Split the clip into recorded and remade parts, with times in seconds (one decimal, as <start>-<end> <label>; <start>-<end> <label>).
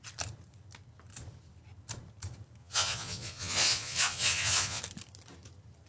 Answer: 0.0-2.6 recorded; 2.6-4.8 remade; 4.8-5.9 recorded